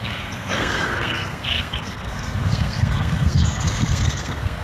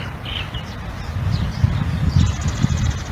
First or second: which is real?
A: second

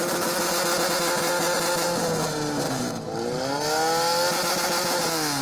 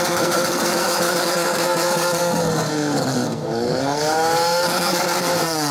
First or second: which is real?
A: first